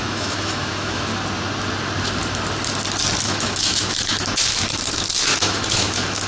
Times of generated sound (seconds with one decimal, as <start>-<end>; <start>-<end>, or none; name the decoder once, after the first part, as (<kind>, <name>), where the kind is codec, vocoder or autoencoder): 0.0-1.1 (autoencoder, DAC-VAE); 3.2-6.3